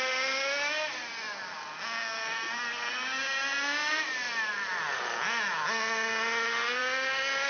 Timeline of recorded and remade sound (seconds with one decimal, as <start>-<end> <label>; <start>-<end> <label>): 0.0-7.5 recorded